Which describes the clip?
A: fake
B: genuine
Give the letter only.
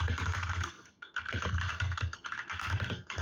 A